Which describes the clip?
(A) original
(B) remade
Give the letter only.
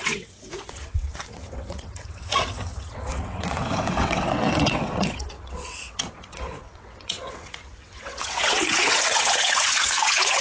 B